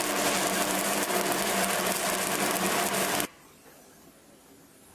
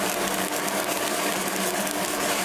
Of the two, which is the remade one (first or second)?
second